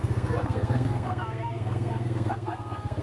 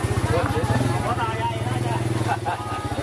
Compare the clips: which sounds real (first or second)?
second